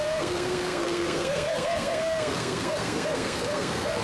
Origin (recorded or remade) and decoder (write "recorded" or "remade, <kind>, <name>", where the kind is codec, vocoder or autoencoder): remade, codec, SNAC